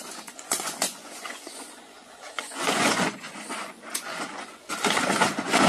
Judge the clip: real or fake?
fake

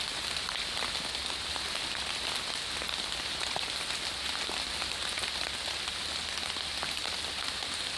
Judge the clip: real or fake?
real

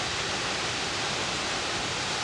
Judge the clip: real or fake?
real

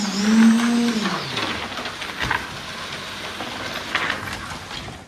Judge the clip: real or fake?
real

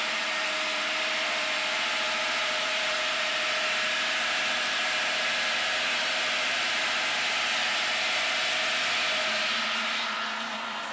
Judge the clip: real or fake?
fake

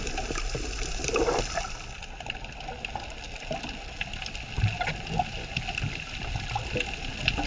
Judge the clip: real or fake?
real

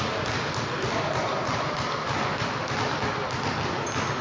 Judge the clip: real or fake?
real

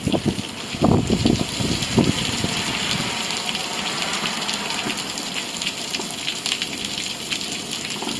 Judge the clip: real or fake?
real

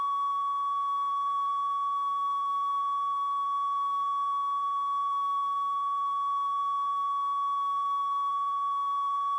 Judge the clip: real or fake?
real